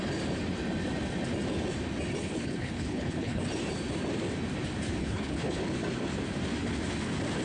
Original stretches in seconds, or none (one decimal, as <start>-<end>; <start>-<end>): 0.0-2.2; 3.4-5.0; 5.6-7.4